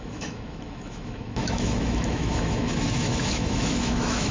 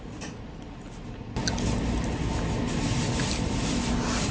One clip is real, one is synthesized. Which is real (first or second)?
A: second